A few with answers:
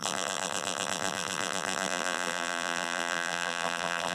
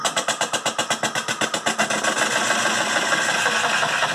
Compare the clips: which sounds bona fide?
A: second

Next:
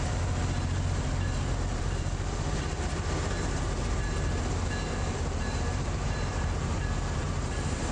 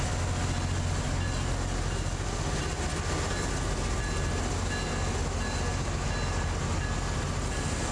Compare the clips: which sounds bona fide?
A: second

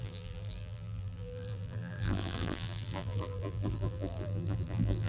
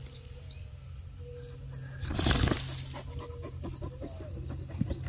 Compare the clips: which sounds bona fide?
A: second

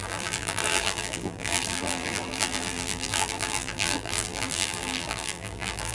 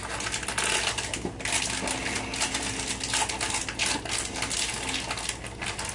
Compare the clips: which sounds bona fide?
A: second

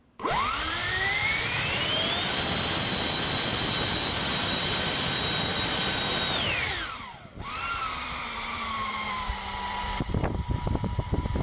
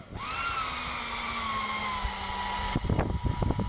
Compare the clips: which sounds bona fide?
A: second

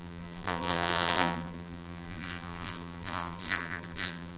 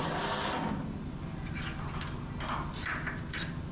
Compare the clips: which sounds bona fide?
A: second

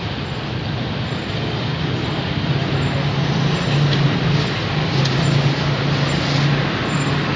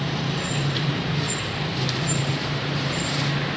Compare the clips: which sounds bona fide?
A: first